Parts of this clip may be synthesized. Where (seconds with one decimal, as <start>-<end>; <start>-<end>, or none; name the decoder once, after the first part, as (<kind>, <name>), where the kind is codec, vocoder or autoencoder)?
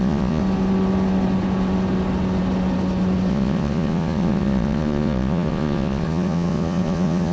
0.0-0.4 (vocoder, Vocos); 3.3-7.3